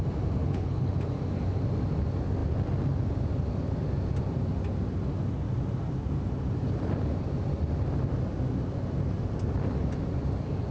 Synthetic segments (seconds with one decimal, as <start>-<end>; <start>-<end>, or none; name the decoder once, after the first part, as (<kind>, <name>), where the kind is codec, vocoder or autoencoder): 0.4-0.9 (codec, HILCodec)